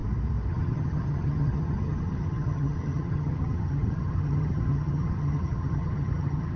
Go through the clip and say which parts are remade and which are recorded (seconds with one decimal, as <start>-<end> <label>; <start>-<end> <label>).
0.0-0.5 recorded; 0.5-6.6 remade